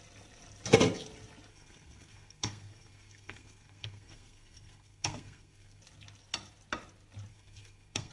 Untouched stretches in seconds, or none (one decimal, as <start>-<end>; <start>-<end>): 0.0-1.5; 5.8-7.3